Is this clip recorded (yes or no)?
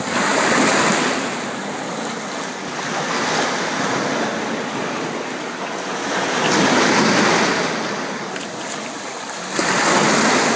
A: yes